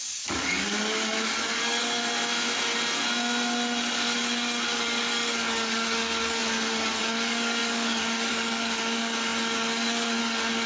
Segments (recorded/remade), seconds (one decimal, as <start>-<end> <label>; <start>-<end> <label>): 0.0-2.0 remade; 2.0-3.9 recorded; 3.9-10.7 remade